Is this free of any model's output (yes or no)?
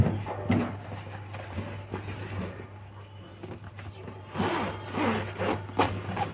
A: yes